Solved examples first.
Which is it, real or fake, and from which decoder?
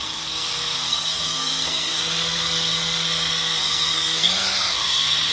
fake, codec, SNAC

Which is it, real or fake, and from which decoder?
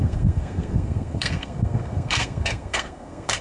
fake, codec, SNAC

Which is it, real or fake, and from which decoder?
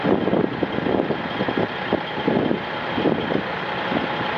real